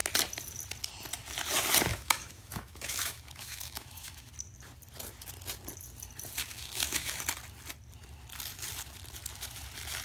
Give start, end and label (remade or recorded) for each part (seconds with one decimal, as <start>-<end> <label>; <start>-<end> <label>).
0.0-1.9 recorded; 1.9-4.3 remade; 4.3-6.4 recorded; 6.4-7.2 remade; 7.2-10.0 recorded